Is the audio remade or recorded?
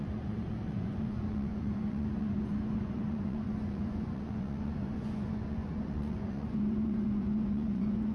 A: remade